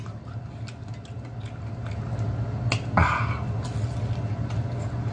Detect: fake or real real